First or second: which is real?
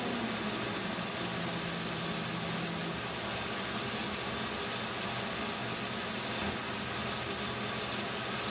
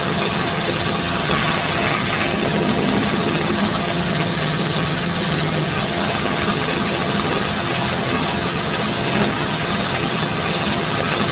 first